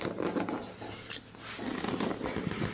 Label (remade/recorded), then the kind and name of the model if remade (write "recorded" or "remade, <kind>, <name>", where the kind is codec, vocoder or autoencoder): recorded